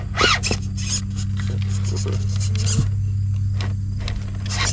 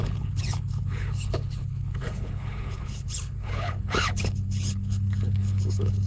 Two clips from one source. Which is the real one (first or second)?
first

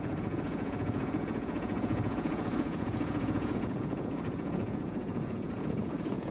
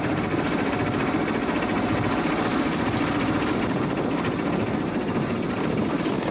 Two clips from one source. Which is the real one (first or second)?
second